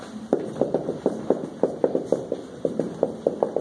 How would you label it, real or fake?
real